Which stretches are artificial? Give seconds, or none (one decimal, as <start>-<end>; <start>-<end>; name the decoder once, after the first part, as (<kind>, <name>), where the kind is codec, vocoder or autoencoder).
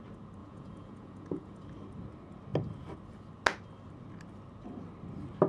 0.4-1.6 (vocoder, Vocos)